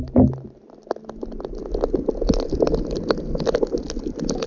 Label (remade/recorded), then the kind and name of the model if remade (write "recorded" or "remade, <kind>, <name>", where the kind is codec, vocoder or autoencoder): recorded